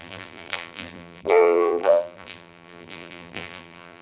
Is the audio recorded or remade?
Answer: remade